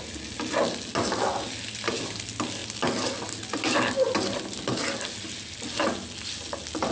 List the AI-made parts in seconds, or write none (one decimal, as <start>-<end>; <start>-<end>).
none

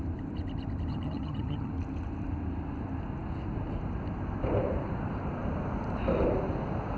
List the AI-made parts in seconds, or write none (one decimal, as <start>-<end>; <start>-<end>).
0.9-1.7

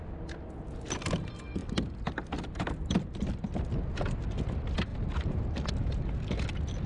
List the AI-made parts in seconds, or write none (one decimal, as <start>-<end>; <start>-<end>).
4.9-5.7